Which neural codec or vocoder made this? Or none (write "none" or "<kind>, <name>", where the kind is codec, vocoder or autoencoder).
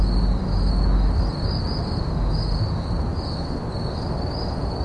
none